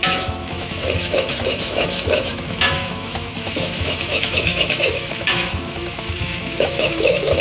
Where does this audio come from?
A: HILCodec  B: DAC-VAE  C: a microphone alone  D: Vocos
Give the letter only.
B